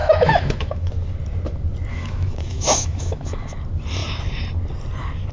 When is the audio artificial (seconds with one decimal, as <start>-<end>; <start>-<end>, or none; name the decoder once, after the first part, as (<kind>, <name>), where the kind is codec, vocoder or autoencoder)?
0.0-0.9 (autoencoder, DAC-VAE); 1.9-3.5